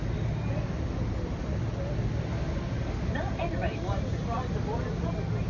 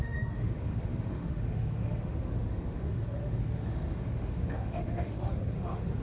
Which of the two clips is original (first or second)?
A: first